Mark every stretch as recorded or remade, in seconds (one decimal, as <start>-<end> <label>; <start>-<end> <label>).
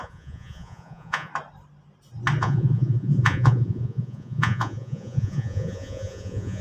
0.0-1.3 remade; 1.3-2.4 recorded; 2.4-6.6 remade